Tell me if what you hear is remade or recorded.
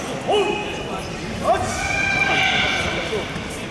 recorded